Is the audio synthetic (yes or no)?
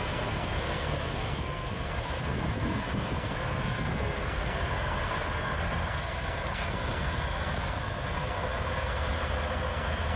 yes